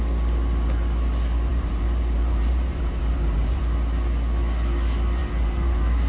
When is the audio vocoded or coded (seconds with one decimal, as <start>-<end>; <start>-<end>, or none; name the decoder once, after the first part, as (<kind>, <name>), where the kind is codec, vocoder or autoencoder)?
1.5-3.6 (vocoder, BigVGAN v2); 5.2-6.1